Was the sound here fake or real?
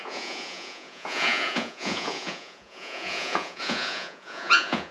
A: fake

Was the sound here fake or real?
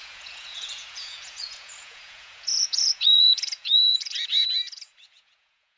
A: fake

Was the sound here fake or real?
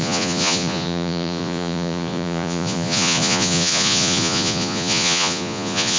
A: fake